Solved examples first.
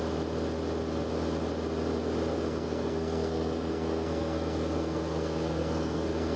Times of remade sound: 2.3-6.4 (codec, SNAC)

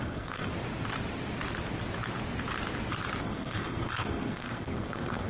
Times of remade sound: 0.0-0.5 (codec, SNAC); 3.2-5.3

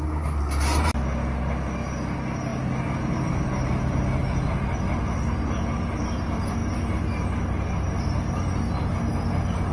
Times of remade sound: none

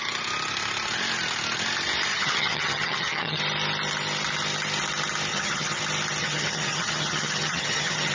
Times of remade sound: 2.1-3.4 (vocoder, HiFi-GAN); 5.3-5.8; 6.2-8.1

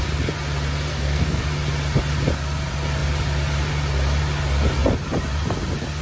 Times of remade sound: 0.9-1.4 (codec, SNAC)